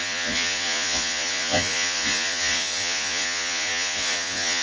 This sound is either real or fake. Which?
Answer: fake